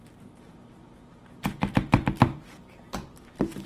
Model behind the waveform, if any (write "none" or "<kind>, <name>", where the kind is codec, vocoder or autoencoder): vocoder, BigVGAN v2